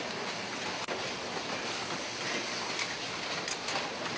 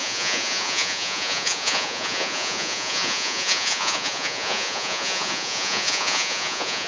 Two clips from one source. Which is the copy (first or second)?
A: second